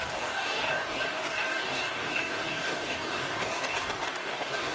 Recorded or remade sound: remade